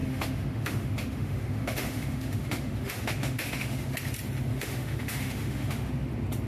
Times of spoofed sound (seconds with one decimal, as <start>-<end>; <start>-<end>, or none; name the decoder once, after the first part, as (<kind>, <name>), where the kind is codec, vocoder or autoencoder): 0.0-3.9 (autoencoder, DAC-VAE); 4.5-5.9